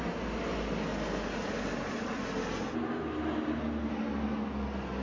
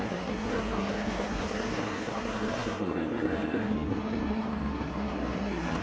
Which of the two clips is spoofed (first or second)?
second